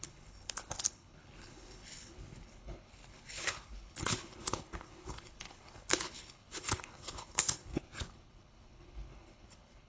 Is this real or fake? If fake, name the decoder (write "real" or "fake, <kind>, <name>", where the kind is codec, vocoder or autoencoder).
fake, codec, HILCodec